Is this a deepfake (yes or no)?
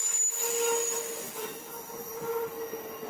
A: no